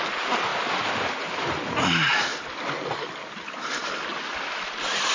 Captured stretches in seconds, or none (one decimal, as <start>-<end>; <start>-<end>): 0.0-3.8